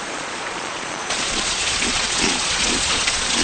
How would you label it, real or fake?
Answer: fake